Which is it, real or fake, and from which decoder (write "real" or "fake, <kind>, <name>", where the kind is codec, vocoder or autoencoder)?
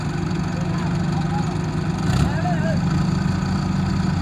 real